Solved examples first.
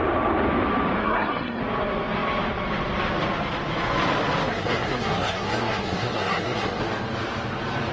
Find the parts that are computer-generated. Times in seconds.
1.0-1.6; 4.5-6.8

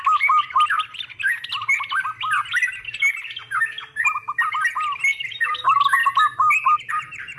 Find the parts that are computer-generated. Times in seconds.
none

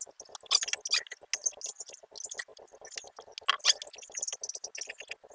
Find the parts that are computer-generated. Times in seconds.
none

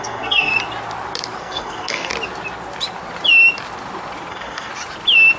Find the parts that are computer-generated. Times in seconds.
0.0-0.5; 1.4-2.1; 4.3-4.7

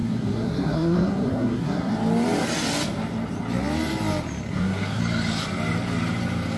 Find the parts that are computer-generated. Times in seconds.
0.0-1.9; 4.5-5.0

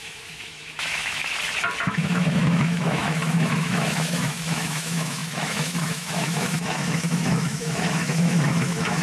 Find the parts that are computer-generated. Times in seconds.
0.0-1.2; 1.8-9.0

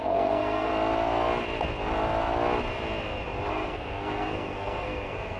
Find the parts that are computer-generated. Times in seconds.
0.0-0.7; 3.5-5.4